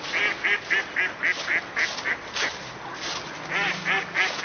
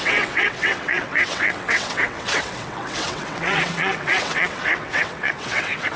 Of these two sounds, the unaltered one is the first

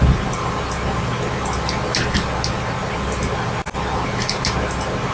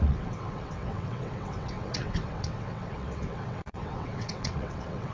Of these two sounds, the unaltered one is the first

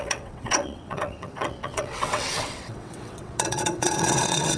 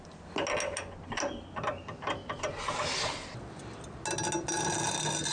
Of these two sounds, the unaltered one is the second